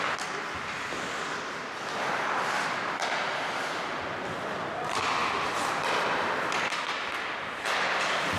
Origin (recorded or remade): recorded